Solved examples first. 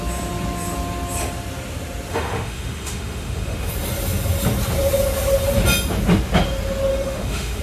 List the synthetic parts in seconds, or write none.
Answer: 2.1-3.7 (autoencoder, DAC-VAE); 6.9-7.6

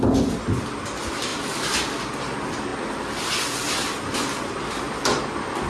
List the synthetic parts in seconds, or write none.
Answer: none

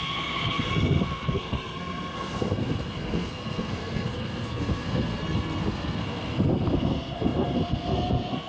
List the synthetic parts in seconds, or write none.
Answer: 0.0-8.5 (codec, SNAC)